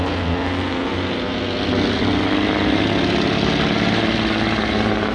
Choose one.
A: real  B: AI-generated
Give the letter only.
A